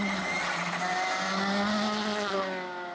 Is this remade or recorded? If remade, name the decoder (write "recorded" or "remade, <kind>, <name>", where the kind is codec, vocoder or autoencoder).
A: recorded